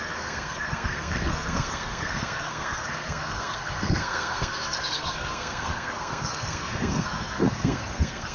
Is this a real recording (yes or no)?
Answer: no